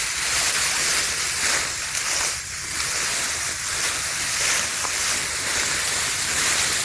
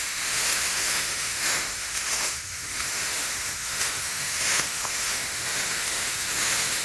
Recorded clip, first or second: first